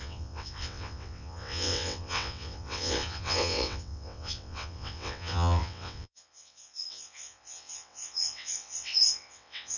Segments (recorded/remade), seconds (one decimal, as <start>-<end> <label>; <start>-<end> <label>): 0.0-9.8 remade